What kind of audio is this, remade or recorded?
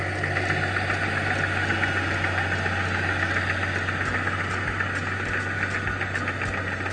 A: recorded